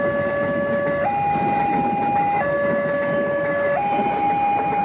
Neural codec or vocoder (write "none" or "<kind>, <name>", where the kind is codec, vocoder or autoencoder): none